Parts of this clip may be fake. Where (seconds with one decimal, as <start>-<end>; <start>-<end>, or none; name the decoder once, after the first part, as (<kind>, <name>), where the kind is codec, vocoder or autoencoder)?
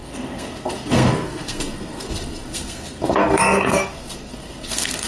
0.0-5.1 (codec, SNAC)